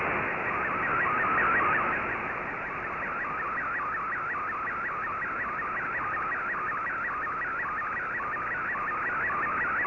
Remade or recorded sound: recorded